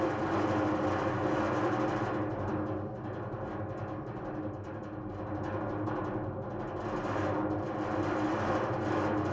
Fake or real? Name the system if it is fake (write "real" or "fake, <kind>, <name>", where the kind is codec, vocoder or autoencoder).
real